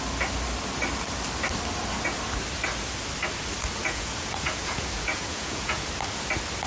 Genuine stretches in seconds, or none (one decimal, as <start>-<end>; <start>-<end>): 0.0-3.8; 5.9-6.7